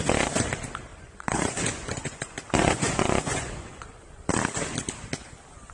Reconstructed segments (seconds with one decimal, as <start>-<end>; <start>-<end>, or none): 0.9-4.3